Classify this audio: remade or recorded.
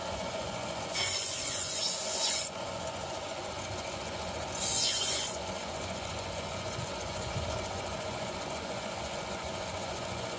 remade